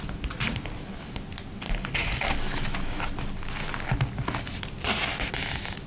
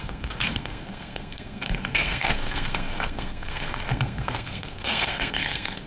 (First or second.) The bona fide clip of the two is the first